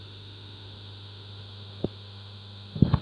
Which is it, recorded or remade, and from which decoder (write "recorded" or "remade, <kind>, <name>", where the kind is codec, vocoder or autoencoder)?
remade, autoencoder, DAC-VAE